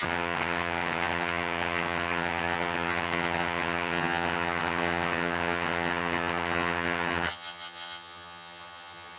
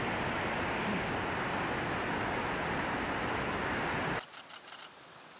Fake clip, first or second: first